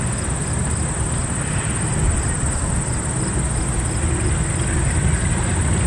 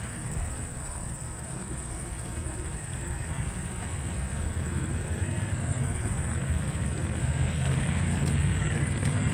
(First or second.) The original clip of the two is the first